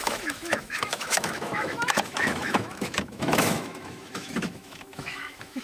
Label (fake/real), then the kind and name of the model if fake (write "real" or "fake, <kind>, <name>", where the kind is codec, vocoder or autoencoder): fake, autoencoder, DAC-VAE